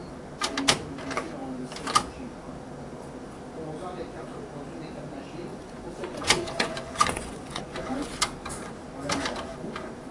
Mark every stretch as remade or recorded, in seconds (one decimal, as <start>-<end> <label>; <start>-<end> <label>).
0.0-5.5 recorded; 5.5-8.1 remade; 8.1-10.1 recorded